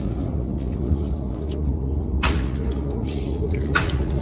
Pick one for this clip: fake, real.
fake